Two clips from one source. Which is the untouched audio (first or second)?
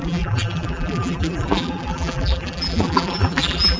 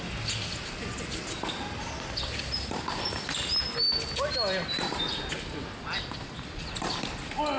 second